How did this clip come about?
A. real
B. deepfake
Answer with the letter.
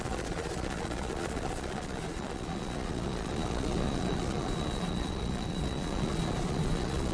B